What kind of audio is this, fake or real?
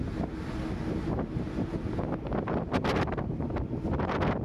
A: real